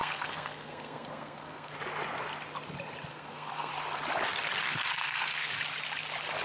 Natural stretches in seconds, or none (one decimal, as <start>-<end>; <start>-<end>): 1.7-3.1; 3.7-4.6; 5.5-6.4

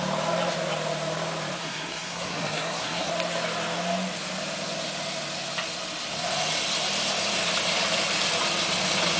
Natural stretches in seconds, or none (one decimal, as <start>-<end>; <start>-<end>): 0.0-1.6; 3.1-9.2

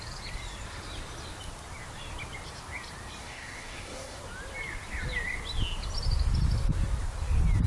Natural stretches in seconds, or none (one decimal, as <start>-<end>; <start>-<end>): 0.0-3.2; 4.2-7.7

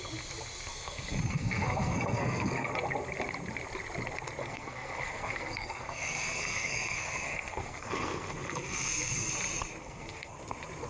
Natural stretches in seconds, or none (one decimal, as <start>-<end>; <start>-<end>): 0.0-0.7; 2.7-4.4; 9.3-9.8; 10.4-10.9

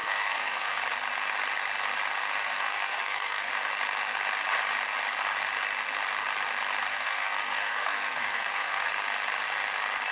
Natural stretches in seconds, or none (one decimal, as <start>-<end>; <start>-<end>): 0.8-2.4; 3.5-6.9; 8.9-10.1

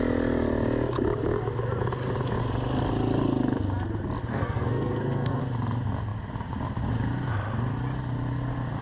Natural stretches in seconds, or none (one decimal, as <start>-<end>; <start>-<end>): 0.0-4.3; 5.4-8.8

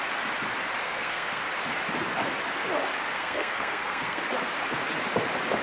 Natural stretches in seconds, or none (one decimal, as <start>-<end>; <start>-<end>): 0.0-0.8; 1.4-3.1; 4.2-5.6

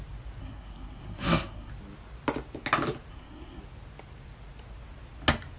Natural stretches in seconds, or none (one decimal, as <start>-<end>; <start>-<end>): 0.0-0.4; 1.7-3.1; 3.6-5.6